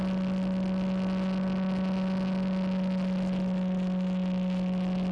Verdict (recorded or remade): recorded